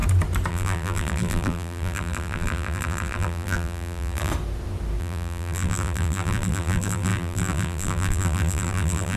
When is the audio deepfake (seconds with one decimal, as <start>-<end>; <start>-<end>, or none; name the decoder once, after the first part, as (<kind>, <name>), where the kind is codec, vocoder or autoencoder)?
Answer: 0.5-4.3 (vocoder, BigVGAN v2); 5.0-9.2